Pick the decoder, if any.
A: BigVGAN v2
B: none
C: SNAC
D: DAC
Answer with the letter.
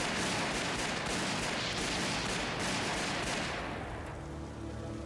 B